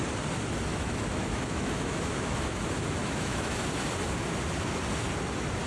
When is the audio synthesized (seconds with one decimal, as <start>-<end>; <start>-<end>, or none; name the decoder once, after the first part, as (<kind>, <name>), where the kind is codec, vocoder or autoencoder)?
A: 0.7-2.6 (autoencoder, DAC-VAE); 3.0-3.6